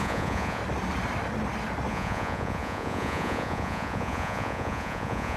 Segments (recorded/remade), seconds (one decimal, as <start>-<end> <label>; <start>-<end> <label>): 0.0-0.6 remade; 0.6-1.9 recorded; 1.9-5.4 remade